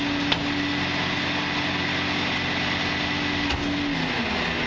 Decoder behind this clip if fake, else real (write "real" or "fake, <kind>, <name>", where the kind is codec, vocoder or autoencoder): real